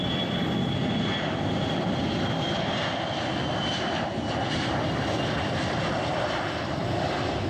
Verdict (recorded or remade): remade